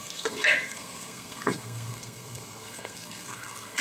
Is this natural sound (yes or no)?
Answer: no